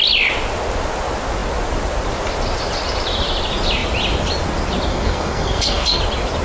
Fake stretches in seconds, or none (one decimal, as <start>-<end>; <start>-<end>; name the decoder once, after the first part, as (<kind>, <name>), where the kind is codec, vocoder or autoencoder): 4.9-6.0 (codec, SNAC)